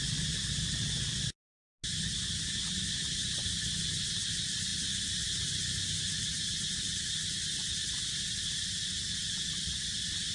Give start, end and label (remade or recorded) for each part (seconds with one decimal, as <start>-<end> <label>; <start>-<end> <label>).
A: 0.0-10.3 recorded